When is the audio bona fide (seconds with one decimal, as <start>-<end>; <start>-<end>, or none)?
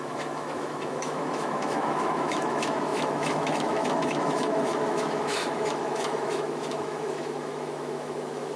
none